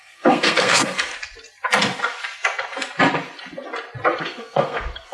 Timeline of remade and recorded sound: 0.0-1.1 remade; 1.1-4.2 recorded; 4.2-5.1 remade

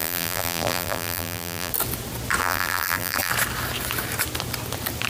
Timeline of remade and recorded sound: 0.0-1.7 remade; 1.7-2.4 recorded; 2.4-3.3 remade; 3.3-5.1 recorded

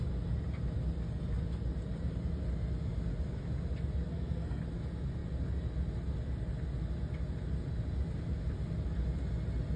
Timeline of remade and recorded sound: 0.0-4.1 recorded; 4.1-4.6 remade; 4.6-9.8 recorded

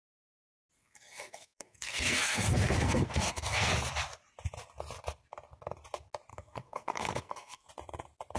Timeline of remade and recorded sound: 0.0-0.8 recorded; 0.8-3.7 remade; 3.7-6.3 recorded; 6.3-7.7 remade; 7.7-8.4 recorded

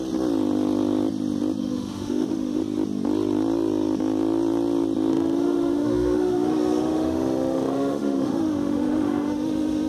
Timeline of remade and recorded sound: 0.0-1.6 recorded; 1.6-2.6 remade; 2.6-5.1 recorded; 5.1-9.9 remade

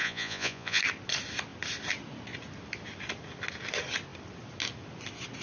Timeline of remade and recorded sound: 0.0-0.8 remade; 0.8-5.4 recorded